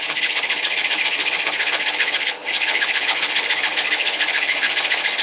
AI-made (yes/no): yes